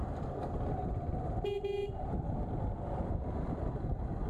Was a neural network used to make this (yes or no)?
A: no